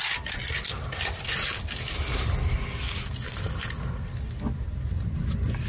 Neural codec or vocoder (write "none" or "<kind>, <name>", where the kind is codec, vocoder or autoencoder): none